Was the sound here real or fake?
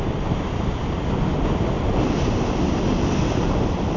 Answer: real